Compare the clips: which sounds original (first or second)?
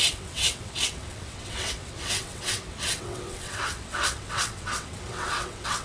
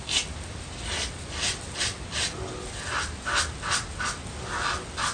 second